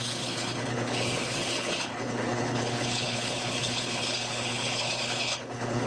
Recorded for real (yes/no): no